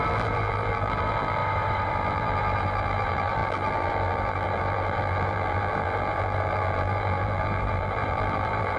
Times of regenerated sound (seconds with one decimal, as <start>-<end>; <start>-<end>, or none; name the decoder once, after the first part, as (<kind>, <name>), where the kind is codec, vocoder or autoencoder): 0.0-1.4 (vocoder, BigVGAN v2); 1.9-8.8